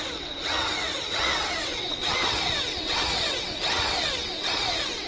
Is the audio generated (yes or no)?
yes